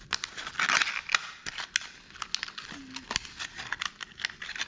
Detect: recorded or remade recorded